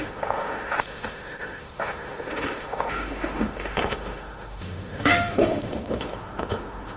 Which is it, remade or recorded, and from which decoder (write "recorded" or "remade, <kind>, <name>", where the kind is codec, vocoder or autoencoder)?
remade, autoencoder, DAC-VAE